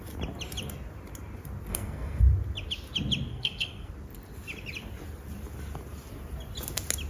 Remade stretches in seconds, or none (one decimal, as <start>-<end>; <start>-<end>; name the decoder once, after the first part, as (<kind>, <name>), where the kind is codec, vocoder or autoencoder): 1.7-2.2 (codec, SNAC); 3.3-3.9